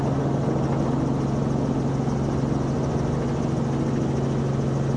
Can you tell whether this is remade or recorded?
recorded